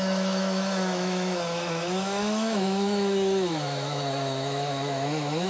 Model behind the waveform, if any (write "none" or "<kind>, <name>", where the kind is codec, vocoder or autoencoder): autoencoder, DAC-VAE